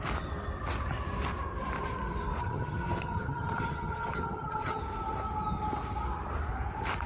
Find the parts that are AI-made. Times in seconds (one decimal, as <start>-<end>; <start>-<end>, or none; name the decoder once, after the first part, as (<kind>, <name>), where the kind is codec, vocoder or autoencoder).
2.4-4.8 (vocoder, HiFi-GAN)

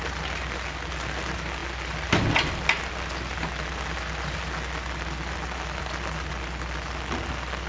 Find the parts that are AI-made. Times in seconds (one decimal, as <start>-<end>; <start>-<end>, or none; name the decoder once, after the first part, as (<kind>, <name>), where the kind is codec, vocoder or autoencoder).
none

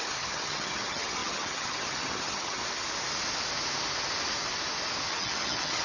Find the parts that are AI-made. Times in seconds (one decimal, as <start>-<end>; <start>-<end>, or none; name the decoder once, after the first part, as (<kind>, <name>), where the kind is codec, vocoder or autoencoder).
0.0-2.6 (vocoder, HiFi-GAN); 5.1-5.8

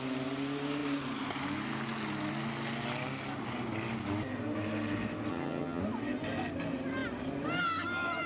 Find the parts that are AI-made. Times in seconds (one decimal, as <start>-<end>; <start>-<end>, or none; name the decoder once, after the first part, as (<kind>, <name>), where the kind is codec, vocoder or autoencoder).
5.3-5.8 (vocoder, HiFi-GAN)

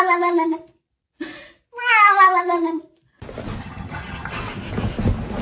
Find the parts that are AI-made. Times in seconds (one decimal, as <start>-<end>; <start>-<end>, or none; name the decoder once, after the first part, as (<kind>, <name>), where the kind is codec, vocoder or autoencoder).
3.6-4.4 (vocoder, HiFi-GAN)

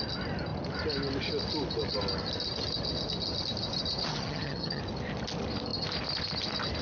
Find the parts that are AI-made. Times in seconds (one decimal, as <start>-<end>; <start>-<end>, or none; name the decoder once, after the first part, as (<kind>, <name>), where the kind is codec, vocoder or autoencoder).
4.1-4.8 (vocoder, HiFi-GAN)

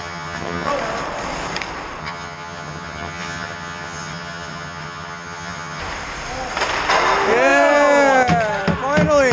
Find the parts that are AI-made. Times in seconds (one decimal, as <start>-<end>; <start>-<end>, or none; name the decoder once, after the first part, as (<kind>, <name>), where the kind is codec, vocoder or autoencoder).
0.0-0.7 (vocoder, HiFi-GAN); 2.0-5.8